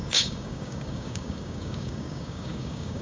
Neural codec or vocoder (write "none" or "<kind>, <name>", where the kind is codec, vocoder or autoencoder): codec, DAC